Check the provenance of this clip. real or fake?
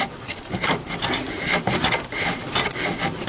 real